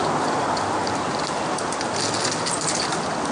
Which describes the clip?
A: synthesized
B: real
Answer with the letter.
B